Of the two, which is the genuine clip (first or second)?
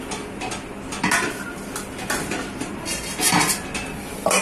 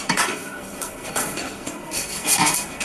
first